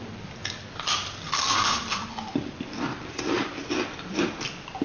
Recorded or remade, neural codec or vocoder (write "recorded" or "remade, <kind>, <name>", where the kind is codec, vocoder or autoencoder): recorded